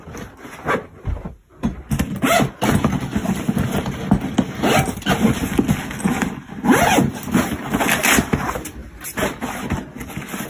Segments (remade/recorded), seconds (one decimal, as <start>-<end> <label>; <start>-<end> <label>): 0.0-10.5 recorded